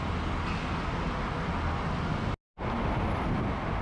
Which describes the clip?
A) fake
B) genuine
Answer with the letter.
B